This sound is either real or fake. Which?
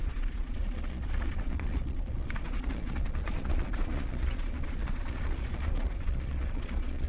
fake